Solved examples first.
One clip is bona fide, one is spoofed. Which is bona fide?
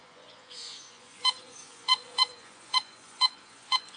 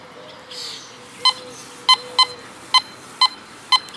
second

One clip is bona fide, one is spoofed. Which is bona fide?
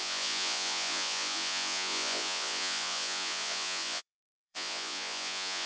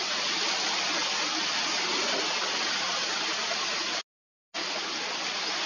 second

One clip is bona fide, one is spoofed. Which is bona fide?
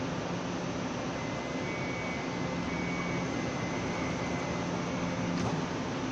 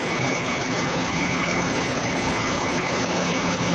first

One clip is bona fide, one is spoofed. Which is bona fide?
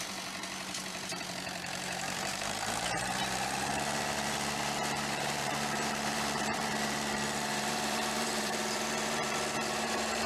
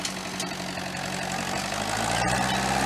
second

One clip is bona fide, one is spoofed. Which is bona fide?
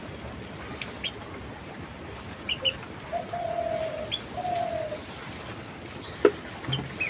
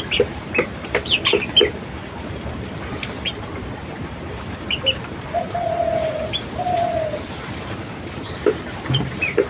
first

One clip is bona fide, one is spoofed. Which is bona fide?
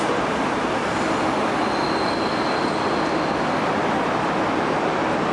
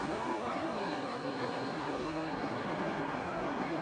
first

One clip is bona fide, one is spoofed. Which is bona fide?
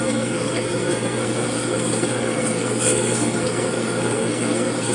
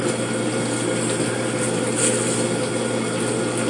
second